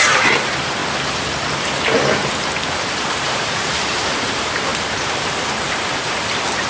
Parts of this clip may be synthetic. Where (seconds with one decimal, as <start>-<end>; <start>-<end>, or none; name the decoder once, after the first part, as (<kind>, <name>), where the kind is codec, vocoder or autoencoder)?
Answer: 0.0-0.8 (vocoder, BigVGAN v2); 3.2-6.7